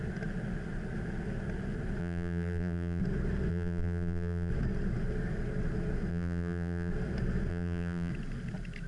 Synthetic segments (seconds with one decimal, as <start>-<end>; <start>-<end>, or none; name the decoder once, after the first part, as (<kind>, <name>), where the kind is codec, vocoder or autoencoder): 2.0-3.0 (vocoder, BigVGAN v2); 3.5-4.5; 6.1-6.9; 7.5-8.1